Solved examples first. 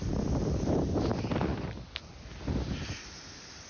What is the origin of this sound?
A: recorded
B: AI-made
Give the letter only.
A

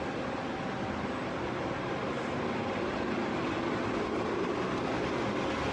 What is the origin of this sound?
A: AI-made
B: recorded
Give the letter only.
B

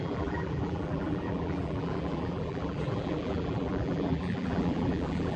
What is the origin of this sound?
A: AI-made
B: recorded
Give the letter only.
A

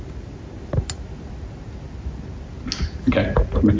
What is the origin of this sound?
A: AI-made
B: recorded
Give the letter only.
B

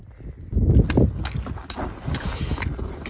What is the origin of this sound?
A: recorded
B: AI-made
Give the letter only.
A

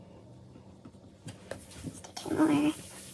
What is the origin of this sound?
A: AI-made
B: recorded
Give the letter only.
B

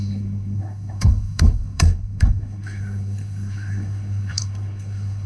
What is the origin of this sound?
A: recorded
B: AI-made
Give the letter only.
B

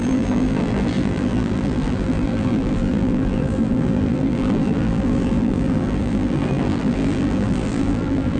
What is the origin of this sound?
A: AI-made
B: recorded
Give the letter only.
A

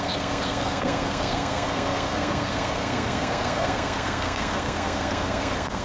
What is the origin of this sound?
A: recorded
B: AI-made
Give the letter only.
B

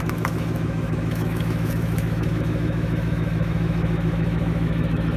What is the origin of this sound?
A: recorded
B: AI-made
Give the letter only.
B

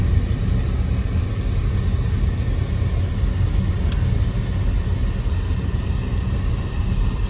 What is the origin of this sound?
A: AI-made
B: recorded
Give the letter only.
B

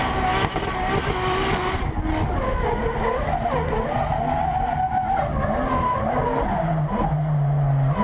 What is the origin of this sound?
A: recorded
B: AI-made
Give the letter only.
A